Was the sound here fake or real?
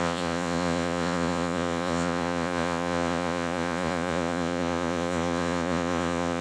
fake